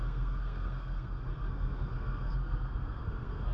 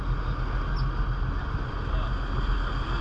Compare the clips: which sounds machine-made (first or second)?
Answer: first